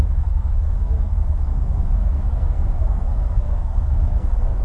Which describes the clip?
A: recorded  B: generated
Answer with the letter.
B